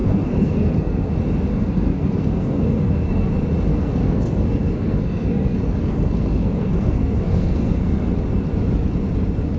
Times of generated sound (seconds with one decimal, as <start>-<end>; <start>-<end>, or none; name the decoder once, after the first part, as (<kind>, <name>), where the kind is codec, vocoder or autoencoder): 0.0-1.1 (codec, SNAC); 1.5-3.3; 3.7-8.1